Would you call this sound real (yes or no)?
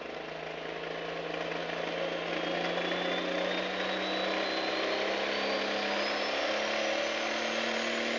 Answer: yes